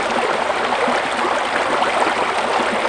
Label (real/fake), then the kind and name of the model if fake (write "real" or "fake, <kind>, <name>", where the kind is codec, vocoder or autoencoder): real